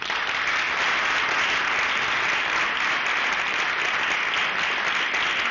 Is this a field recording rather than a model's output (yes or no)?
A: yes